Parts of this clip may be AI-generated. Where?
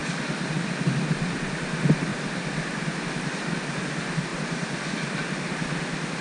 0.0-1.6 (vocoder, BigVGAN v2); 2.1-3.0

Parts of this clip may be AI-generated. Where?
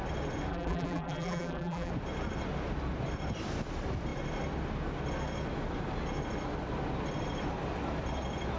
0.5-1.9 (vocoder, BigVGAN v2)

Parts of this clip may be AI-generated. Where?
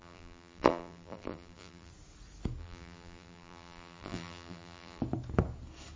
0.0-1.9 (vocoder, BigVGAN v2); 2.6-5.0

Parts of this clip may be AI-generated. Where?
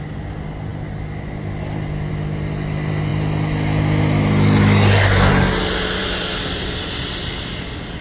6.0-6.8 (vocoder, BigVGAN v2)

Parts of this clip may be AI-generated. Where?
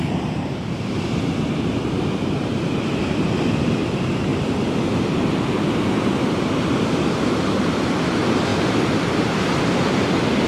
0.0-4.3 (vocoder, BigVGAN v2); 6.7-8.5; 9.1-10.5